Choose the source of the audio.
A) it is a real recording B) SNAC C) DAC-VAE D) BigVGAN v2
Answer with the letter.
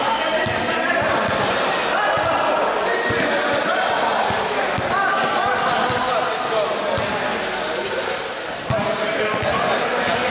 A